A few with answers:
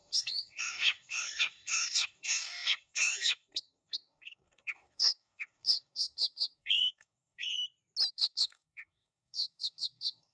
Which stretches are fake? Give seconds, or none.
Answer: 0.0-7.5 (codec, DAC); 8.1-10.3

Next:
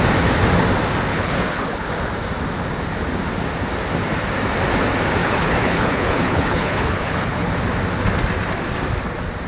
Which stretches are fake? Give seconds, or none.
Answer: 1.1-1.9 (codec, HILCodec); 5.2-7.5